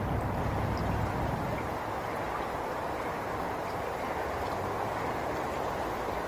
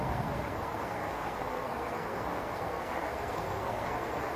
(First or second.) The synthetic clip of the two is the second